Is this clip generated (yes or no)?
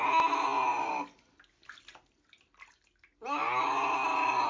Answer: no